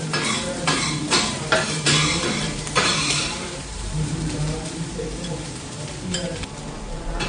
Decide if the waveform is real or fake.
fake